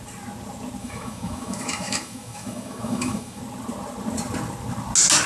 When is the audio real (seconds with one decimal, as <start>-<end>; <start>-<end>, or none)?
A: 0.0-0.8; 3.4-5.3